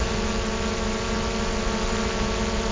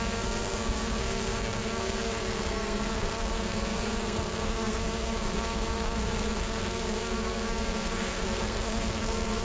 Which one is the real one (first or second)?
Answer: first